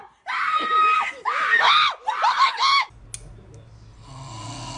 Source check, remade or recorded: recorded